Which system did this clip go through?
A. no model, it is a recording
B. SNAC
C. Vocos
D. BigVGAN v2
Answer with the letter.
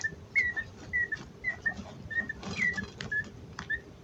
A